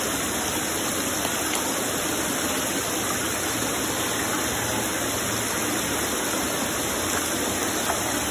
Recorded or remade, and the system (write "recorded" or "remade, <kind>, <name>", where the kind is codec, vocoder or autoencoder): recorded